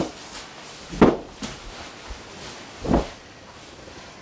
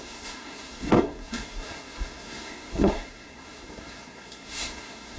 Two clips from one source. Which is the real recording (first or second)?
first